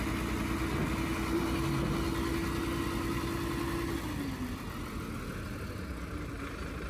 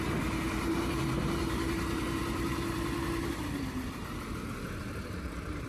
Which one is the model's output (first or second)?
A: second